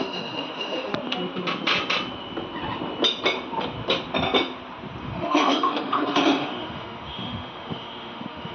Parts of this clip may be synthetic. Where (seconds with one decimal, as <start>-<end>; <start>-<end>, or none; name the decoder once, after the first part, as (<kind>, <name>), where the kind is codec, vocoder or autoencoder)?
0.0-0.9 (autoencoder, DAC-VAE); 5.0-8.5